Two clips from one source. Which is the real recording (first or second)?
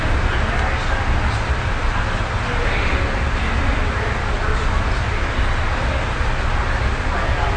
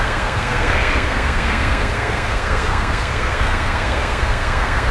first